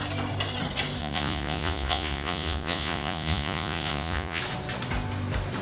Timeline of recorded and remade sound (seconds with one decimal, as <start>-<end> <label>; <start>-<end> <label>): 0.0-1.0 recorded; 1.0-4.4 remade; 4.4-5.6 recorded